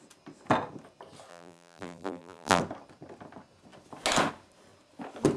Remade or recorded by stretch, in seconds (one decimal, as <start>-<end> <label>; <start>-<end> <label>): 0.0-1.3 recorded; 1.3-2.6 remade; 2.6-5.4 recorded